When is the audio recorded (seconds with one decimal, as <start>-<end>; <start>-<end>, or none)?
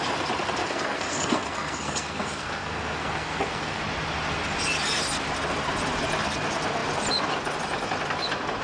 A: 0.0-0.6; 3.8-8.6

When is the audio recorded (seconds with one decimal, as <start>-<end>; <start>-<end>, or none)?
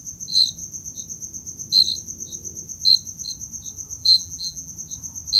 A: 0.0-4.0; 4.7-5.4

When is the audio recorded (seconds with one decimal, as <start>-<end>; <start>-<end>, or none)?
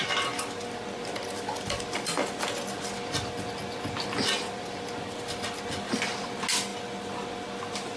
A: 0.0-8.0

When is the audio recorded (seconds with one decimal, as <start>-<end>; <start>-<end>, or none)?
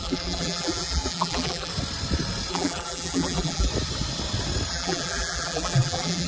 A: 1.7-2.5; 3.7-4.7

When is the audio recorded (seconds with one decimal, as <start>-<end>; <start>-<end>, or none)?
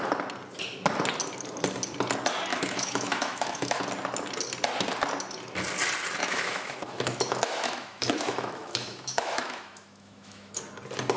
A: 0.0-2.5; 3.8-6.2; 10.6-11.2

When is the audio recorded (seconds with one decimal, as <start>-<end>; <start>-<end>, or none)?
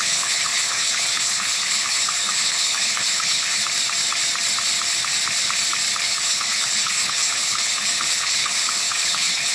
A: 3.6-6.0